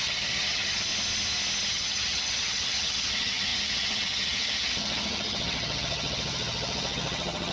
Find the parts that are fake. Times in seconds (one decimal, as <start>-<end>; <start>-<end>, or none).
0.0-0.9; 1.7-7.5